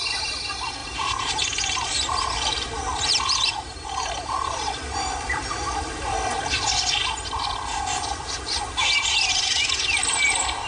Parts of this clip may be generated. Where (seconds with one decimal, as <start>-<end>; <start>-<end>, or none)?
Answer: 0.8-4.9